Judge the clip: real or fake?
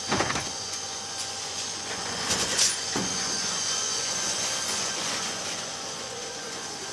fake